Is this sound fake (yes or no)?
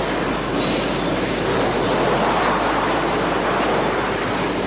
no